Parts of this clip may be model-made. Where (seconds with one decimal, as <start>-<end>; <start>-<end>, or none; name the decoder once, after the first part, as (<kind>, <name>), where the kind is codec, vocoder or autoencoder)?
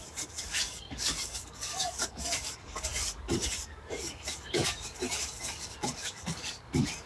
0.0-7.1 (codec, DAC)